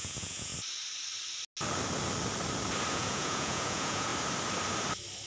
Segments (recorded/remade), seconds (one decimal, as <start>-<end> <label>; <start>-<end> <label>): 0.0-0.5 remade; 0.5-2.9 recorded; 2.9-4.1 remade; 4.1-5.3 recorded